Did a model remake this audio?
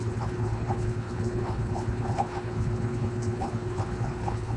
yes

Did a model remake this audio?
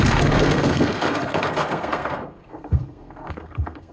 yes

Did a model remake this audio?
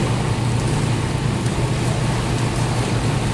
no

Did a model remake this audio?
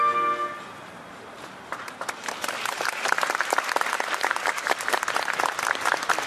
no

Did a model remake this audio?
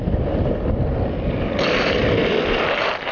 no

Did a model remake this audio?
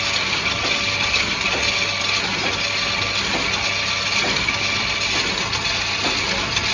no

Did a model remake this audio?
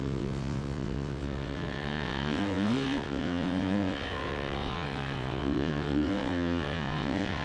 yes